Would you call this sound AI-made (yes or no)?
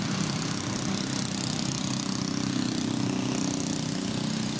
no